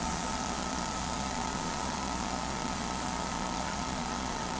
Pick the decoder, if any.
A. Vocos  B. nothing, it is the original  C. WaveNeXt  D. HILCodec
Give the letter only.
A